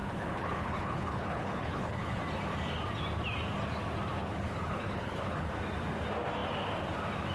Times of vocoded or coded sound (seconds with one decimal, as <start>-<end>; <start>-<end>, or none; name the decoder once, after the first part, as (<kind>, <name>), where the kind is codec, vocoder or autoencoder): 0.0-2.2 (codec, HILCodec); 4.2-5.5